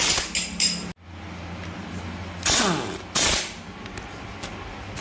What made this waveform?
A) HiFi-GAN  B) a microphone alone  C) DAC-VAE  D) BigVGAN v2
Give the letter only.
B